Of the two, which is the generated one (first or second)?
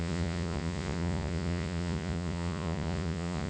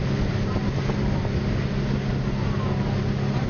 first